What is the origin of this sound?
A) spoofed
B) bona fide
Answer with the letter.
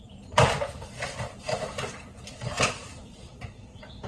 A